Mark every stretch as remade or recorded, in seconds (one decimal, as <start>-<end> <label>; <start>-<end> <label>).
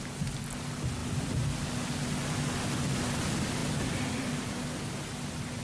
0.0-5.6 recorded